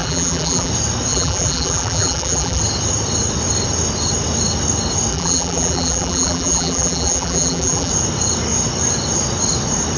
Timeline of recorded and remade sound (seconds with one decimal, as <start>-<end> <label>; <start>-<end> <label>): 0.0-0.7 remade; 0.7-1.1 recorded; 1.1-2.6 remade; 2.6-5.1 recorded; 5.1-7.9 remade; 7.9-10.0 recorded